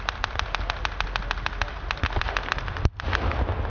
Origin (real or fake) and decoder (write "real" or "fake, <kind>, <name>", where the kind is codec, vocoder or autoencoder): real